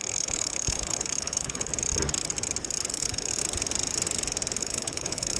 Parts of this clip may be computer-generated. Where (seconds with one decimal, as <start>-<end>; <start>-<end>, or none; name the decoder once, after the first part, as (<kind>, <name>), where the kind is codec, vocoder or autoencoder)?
0.0-1.7 (codec, HILCodec); 2.9-3.3; 4.6-5.4